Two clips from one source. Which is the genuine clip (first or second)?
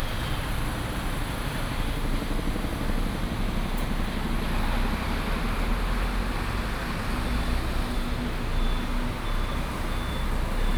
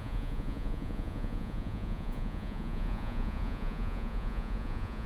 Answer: first